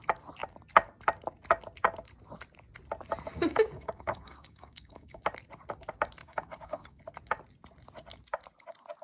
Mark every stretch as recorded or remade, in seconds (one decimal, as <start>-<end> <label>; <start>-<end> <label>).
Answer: 0.0-3.3 recorded; 3.3-5.2 remade; 5.2-6.2 recorded; 6.2-7.0 remade; 7.0-9.0 recorded